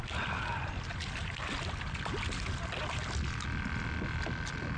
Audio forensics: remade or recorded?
recorded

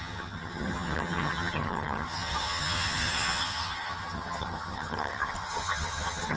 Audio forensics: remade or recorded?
remade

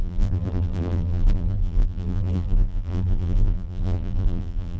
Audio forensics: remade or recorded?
remade